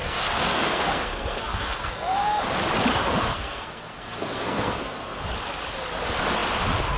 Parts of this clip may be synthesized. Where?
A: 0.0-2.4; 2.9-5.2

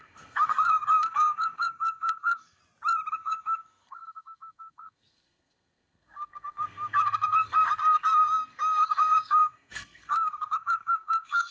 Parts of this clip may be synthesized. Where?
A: 0.0-2.6; 3.1-11.5

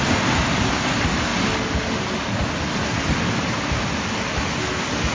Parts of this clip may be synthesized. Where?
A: none

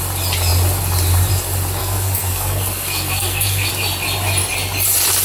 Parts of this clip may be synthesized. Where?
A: 1.8-3.7

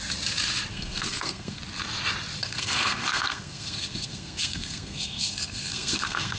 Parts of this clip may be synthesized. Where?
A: 0.7-1.6; 2.4-6.4

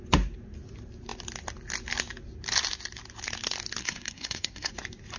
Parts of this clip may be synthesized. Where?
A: 3.8-4.7

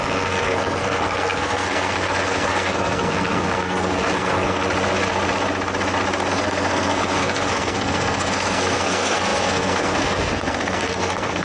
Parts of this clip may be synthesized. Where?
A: 0.0-4.6; 6.3-11.4

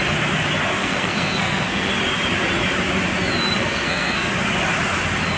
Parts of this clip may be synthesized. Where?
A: 0.8-1.9; 3.6-4.3